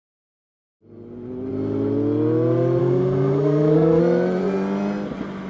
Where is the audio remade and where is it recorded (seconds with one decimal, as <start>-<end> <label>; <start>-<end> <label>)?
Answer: 0.0-2.8 recorded; 2.8-4.0 remade; 4.0-5.5 recorded

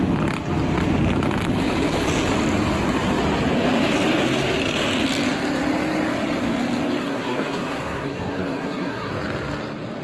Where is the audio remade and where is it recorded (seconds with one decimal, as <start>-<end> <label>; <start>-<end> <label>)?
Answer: 0.0-7.0 recorded; 7.0-9.1 remade; 9.1-10.0 recorded

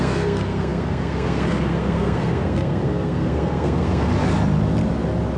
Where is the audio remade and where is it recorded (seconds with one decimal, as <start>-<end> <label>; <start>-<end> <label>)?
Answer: 0.0-4.1 remade; 4.1-5.4 recorded

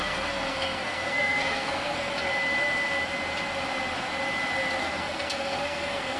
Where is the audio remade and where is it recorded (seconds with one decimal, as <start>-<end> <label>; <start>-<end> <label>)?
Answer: 0.0-2.1 remade; 2.1-4.8 recorded; 4.8-6.2 remade